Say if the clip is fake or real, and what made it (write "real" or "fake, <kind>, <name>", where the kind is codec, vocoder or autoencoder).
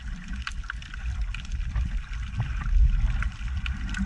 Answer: real